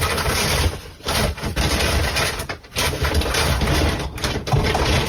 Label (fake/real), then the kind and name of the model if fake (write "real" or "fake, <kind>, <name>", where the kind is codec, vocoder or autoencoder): real